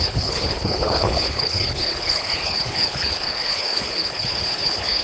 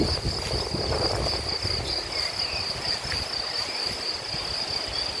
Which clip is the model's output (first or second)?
first